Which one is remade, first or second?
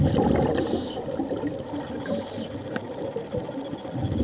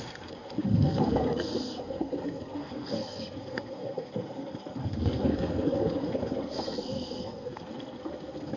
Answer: second